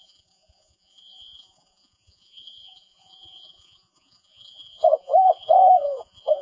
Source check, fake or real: fake